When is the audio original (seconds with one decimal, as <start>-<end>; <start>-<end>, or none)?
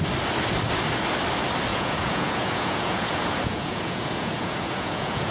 0.0-1.7